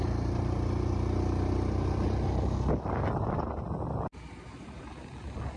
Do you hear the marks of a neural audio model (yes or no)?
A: no